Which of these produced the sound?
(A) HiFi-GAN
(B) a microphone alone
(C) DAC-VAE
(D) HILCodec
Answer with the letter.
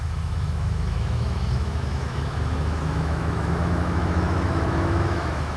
C